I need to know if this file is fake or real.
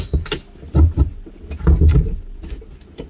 real